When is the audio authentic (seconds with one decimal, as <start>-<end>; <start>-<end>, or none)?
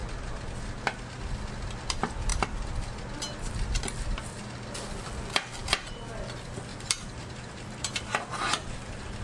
0.0-5.6; 6.1-6.7